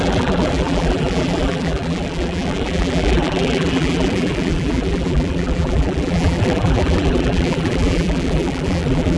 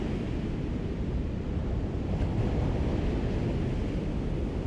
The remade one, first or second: first